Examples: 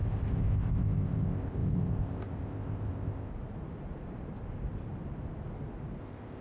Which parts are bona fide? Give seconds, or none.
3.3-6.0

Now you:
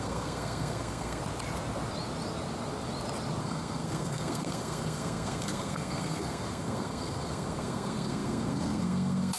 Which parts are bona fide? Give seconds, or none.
1.2-3.4

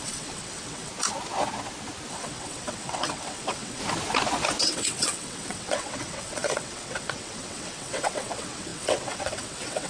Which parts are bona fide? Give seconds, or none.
0.9-2.1; 3.8-4.6

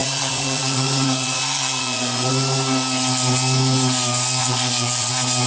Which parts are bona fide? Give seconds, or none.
2.3-4.4; 5.1-5.5

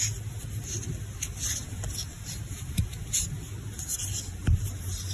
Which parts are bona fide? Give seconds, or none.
0.0-2.1; 2.8-4.4

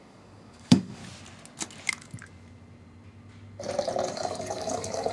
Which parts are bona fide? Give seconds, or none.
1.0-4.1

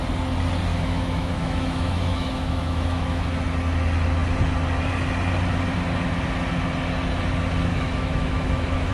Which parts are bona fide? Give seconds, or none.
0.0-0.7; 3.3-7.7